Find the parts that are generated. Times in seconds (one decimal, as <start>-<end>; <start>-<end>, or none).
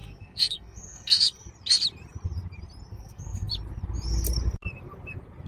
0.0-1.5; 2.9-3.5